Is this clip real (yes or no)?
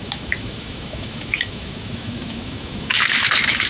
no